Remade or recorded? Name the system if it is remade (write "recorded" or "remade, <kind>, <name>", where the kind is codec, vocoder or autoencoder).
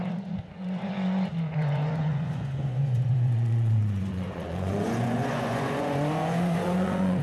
remade, vocoder, Vocos